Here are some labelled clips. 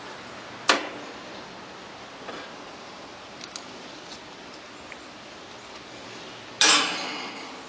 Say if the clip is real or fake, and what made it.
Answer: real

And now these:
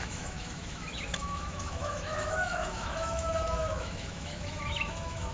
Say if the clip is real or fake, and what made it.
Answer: fake, autoencoder, DAC-VAE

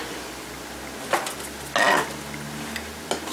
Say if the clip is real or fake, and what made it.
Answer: real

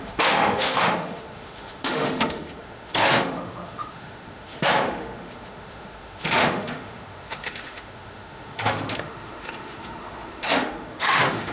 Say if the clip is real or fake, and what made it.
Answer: fake, autoencoder, DAC-VAE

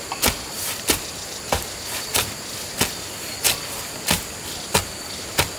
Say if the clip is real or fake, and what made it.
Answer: real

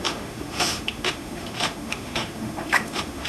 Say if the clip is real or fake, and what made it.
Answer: fake, autoencoder, DAC-VAE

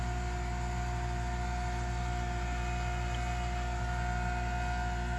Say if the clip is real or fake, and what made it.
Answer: real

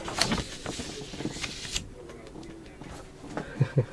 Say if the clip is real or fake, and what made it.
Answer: real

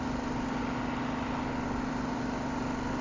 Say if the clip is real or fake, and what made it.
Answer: real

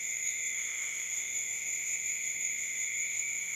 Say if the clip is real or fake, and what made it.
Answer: fake, autoencoder, DAC-VAE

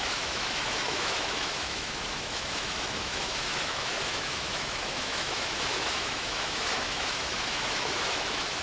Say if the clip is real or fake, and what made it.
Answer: fake, autoencoder, DAC-VAE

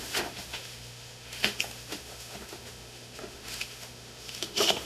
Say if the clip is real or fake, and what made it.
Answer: fake, autoencoder, DAC-VAE